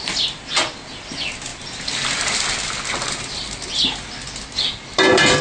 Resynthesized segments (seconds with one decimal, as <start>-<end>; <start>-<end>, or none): none